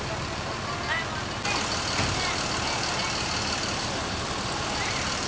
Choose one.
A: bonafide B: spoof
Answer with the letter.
A